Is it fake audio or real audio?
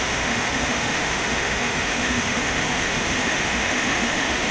fake